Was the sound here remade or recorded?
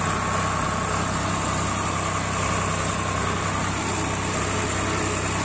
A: recorded